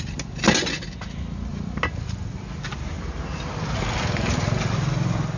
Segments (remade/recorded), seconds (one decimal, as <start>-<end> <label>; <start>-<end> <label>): 0.0-5.4 recorded